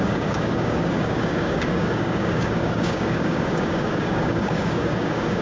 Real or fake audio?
fake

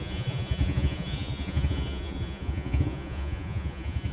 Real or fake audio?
fake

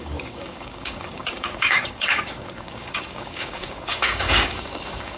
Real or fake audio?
fake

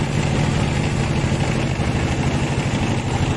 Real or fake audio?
real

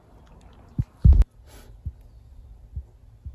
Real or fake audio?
real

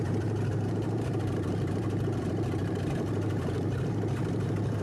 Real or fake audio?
fake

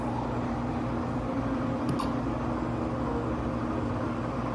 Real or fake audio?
real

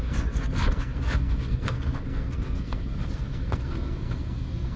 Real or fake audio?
fake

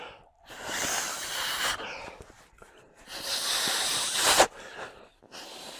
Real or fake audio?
real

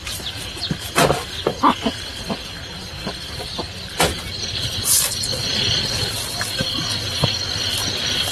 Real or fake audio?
real